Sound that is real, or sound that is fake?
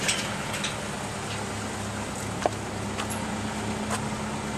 real